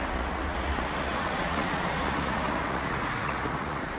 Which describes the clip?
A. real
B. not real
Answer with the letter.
B